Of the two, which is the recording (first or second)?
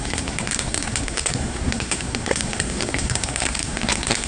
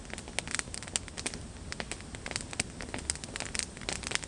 second